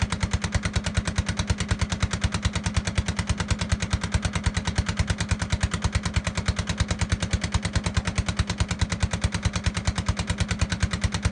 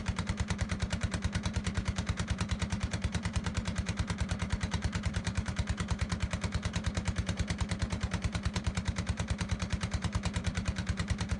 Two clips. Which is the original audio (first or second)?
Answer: first